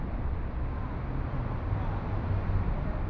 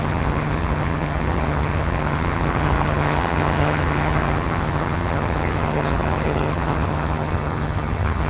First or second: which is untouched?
first